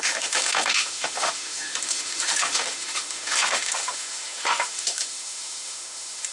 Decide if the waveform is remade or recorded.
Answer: remade